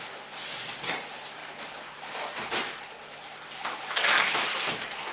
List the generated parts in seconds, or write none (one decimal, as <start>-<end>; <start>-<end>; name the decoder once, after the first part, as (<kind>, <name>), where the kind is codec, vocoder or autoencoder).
none